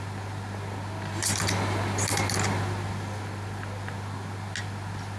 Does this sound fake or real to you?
real